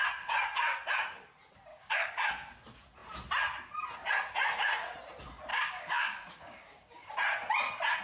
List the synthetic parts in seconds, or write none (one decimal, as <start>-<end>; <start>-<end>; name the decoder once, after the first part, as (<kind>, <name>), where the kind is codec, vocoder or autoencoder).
1.7-2.3 (codec, DAC); 5.5-7.1